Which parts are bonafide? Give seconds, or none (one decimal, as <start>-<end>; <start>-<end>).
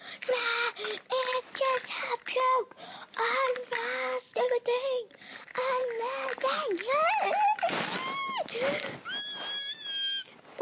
0.0-10.6